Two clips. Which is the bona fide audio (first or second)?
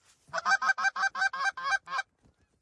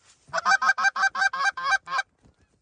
first